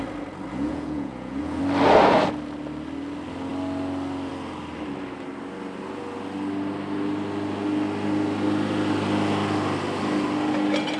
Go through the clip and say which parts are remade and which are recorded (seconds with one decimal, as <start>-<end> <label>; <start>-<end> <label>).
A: 0.0-0.5 recorded; 0.5-1.6 remade; 1.6-11.0 recorded